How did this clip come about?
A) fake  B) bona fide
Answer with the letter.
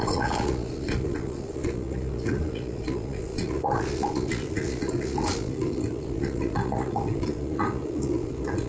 A